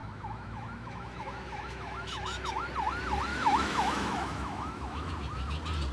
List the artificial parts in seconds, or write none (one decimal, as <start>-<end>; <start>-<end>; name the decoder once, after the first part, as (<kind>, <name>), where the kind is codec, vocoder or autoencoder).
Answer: 0.0-2.7 (autoencoder, DAC-VAE); 3.3-5.1